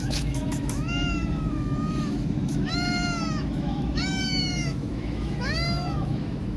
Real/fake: fake